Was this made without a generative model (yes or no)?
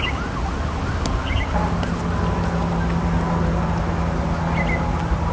yes